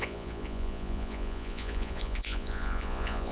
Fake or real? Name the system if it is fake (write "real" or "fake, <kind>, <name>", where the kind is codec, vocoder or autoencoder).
fake, vocoder, Vocos